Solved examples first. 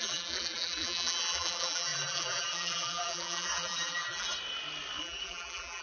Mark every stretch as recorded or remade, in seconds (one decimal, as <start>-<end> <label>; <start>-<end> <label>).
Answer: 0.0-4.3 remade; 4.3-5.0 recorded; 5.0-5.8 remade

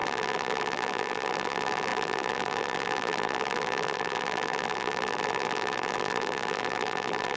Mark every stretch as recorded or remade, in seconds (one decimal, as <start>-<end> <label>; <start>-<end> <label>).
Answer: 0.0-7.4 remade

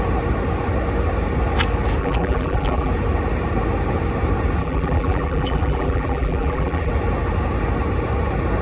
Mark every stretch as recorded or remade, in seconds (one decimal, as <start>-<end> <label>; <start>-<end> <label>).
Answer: 0.0-2.0 recorded; 2.0-2.9 remade; 2.9-4.6 recorded; 4.6-6.9 remade; 6.9-8.6 recorded

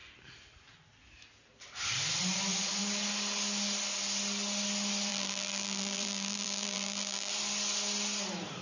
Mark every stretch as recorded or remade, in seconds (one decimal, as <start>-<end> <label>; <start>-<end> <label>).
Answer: 0.0-5.1 recorded; 5.1-7.3 remade; 7.3-8.6 recorded

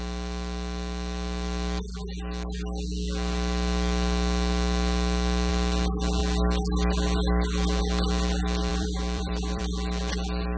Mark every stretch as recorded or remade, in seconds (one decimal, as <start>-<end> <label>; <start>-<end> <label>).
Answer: 0.0-8.7 recorded; 8.7-9.6 remade; 9.6-10.6 recorded

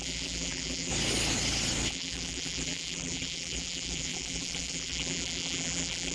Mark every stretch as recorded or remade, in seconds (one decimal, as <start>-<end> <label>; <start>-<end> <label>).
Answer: 0.0-0.9 remade; 0.9-1.9 recorded; 1.9-6.1 remade